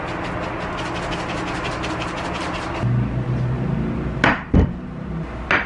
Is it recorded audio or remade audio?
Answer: recorded